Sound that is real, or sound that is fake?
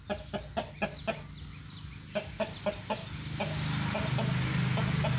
real